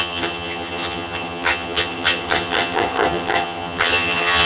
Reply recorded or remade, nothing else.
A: remade